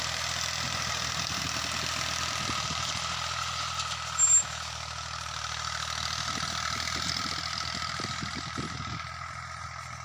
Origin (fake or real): real